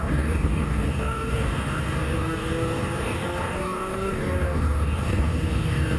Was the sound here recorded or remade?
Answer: remade